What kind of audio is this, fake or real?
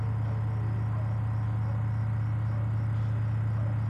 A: real